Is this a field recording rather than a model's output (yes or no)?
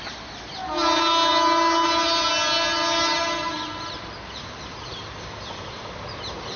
yes